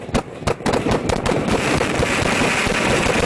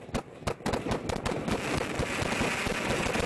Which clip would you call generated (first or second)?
first